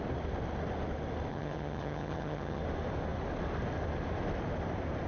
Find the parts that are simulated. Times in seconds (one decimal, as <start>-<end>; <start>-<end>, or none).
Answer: 1.3-2.6

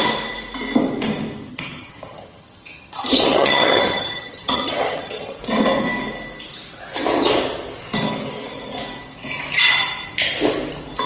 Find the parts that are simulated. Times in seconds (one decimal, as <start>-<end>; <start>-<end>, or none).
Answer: 1.5-5.4

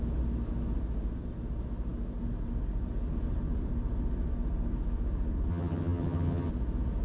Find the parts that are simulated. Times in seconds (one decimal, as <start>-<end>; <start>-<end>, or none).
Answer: 5.5-6.5

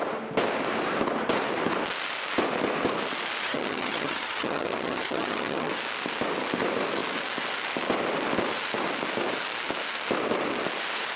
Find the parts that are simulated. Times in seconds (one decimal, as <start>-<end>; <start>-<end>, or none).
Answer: 3.4-5.7

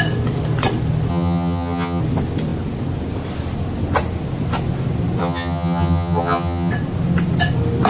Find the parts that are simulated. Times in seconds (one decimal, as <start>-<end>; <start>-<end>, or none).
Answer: 1.1-2.0; 5.2-6.7

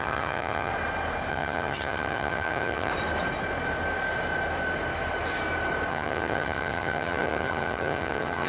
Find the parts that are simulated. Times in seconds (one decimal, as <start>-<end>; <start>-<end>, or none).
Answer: 0.0-0.7; 1.3-2.9; 5.9-8.5

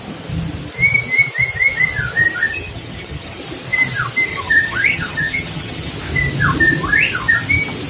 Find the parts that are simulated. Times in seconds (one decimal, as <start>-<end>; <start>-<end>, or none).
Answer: 2.5-3.4; 4.3-5.9